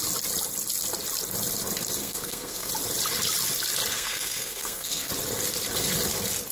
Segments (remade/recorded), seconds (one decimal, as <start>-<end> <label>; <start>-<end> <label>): 0.0-2.0 recorded; 2.0-2.7 remade; 2.7-3.9 recorded; 3.9-5.1 remade; 5.1-6.5 recorded

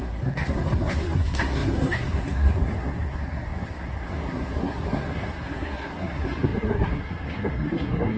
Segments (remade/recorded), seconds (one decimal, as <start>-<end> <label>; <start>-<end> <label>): 0.0-8.2 remade

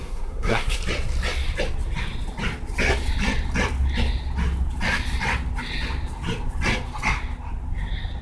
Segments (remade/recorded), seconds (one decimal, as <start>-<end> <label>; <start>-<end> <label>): 0.0-0.8 remade; 0.8-8.2 recorded

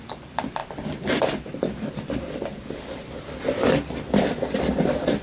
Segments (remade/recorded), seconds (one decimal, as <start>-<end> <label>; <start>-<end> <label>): 0.0-5.2 recorded

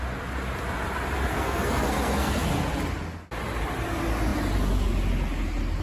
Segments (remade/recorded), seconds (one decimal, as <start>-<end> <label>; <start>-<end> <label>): 0.0-1.3 recorded; 1.3-2.5 remade; 2.5-5.8 recorded

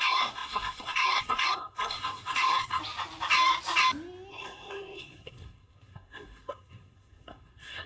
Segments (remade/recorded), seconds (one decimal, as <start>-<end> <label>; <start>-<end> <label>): 0.0-2.8 remade; 2.8-4.3 recorded; 4.3-7.9 remade

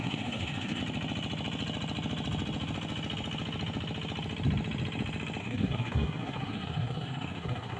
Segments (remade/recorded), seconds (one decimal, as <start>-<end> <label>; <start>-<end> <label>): 0.0-0.8 remade; 0.8-5.4 recorded; 5.4-7.8 remade

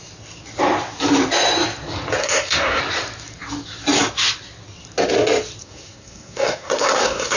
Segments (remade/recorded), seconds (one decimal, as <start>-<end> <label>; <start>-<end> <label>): 0.0-2.2 recorded; 2.2-2.8 remade; 2.8-5.6 recorded; 5.6-7.4 remade